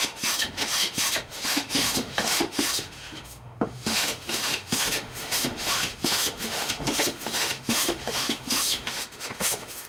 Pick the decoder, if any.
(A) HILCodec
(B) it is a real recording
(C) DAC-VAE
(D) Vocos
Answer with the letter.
C